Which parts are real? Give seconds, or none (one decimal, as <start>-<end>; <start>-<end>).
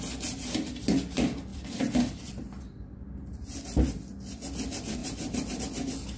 0.0-1.5; 2.3-5.0; 5.6-6.2